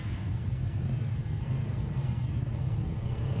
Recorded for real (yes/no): no